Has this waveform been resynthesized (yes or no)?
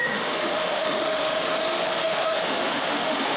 yes